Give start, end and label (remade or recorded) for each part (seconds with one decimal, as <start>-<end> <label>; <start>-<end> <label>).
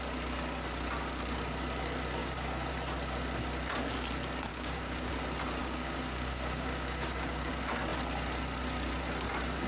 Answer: 0.0-2.2 recorded; 2.2-2.7 remade; 2.7-4.5 recorded; 4.5-5.1 remade; 5.1-5.6 recorded; 5.6-7.5 remade; 7.5-9.7 recorded